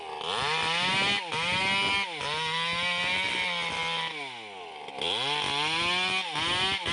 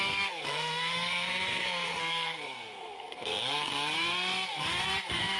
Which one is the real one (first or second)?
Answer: first